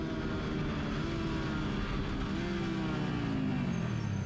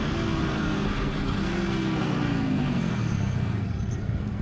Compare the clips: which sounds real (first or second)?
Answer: first